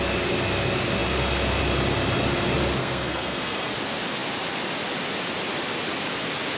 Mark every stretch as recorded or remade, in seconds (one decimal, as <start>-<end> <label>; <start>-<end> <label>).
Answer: 0.0-2.8 recorded; 2.8-3.7 remade; 3.7-6.6 recorded